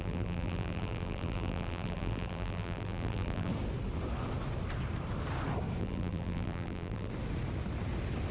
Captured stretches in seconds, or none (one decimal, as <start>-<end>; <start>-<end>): 3.5-5.8; 7.1-8.3